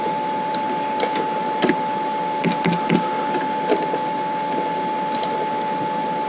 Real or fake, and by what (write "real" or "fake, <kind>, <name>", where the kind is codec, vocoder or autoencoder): real